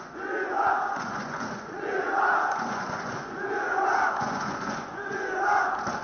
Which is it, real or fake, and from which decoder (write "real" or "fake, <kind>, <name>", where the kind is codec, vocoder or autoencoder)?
fake, vocoder, Vocos